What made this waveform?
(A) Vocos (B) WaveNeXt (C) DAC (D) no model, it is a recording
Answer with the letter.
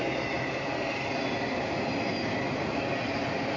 D